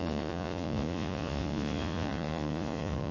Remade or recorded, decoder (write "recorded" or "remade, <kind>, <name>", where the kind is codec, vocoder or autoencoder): remade, vocoder, Vocos